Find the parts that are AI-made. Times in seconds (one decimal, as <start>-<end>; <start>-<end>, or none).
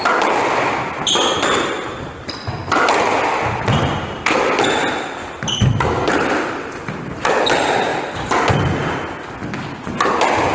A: none